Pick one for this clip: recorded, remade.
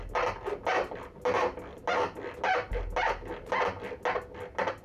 recorded